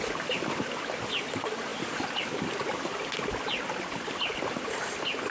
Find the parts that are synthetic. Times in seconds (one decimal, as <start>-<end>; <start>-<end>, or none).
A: none